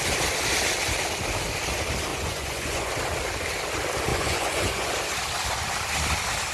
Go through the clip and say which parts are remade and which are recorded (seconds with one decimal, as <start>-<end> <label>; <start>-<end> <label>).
0.0-2.1 recorded; 2.1-2.9 remade; 2.9-4.1 recorded; 4.1-4.9 remade; 4.9-6.5 recorded